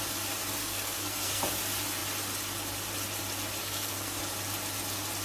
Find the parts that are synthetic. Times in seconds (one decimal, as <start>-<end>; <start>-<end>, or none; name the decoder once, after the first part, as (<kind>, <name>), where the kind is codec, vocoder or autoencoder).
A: 0.6-1.4 (codec, SNAC); 3.6-4.2